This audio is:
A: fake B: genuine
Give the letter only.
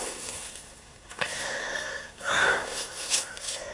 A